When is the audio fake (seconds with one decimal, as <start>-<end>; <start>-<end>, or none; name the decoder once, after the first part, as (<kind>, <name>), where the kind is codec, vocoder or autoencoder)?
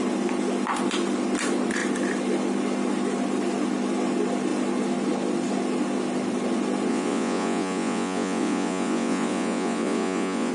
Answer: 6.9-10.5 (vocoder, Vocos)